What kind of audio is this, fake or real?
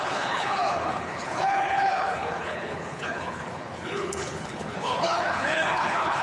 fake